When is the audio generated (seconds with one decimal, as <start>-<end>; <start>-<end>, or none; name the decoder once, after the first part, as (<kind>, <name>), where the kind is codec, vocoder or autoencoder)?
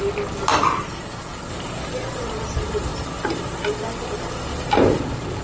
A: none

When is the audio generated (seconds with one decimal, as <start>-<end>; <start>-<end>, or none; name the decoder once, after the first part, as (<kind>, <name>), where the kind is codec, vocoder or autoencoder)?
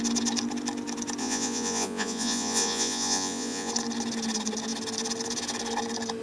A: 1.2-3.7 (vocoder, Vocos)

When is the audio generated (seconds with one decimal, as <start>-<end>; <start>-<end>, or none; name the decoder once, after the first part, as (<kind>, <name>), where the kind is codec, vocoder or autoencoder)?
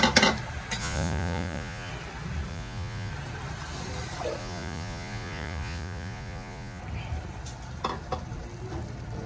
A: 0.8-1.9 (vocoder, Vocos); 2.5-3.1; 4.4-6.8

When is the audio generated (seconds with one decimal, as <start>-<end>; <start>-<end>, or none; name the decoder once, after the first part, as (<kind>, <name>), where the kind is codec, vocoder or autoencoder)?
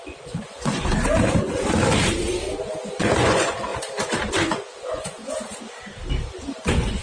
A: 0.0-0.9 (vocoder, Vocos); 3.0-3.7; 4.3-5.2; 6.6-7.0